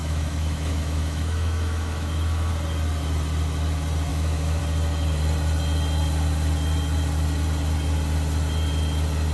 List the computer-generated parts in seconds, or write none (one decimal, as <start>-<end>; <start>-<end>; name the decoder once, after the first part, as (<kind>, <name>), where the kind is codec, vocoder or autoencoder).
0.0-2.5 (autoencoder, DAC-VAE); 4.1-4.6